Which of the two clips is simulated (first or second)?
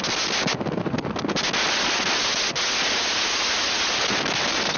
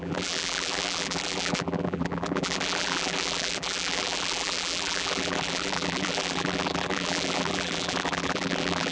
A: second